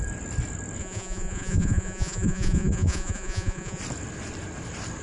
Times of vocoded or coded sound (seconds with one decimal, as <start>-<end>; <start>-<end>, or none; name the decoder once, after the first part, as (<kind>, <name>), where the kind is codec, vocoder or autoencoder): 0.8-3.8 (vocoder, Vocos)